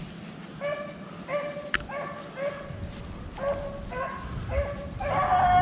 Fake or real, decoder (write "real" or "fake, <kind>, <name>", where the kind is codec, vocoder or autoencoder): real